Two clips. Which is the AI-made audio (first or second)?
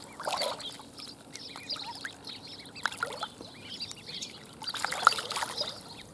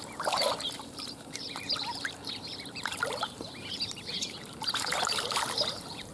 second